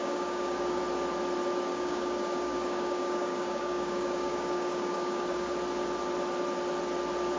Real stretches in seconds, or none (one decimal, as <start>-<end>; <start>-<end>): 0.8-1.7; 5.5-7.4